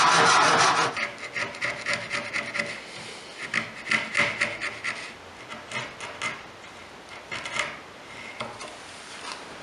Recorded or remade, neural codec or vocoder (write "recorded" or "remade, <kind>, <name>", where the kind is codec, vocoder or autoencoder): recorded